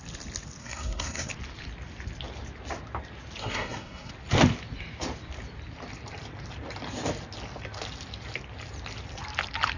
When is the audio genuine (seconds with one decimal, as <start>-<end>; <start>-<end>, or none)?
0.0-0.6; 1.3-3.4; 4.1-9.8